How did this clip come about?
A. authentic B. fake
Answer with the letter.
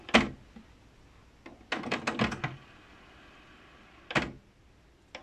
A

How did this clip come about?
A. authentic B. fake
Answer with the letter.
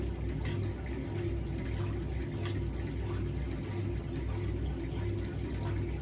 A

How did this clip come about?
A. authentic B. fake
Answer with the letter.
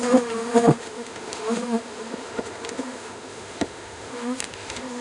B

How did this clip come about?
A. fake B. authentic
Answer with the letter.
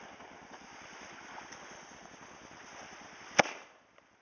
B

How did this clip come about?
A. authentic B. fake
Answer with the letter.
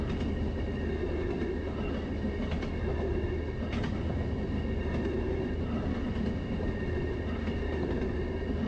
A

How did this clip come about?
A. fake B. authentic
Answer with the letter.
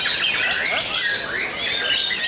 B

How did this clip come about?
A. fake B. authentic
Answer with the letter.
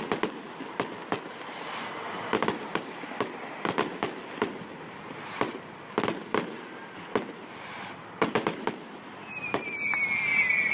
B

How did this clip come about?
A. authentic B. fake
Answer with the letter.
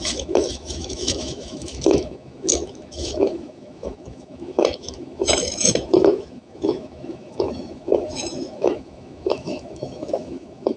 B